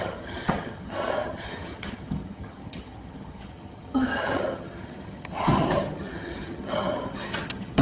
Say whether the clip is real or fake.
fake